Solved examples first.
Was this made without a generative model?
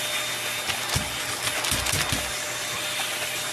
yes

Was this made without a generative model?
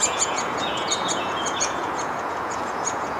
no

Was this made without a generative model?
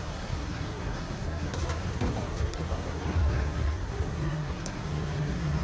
no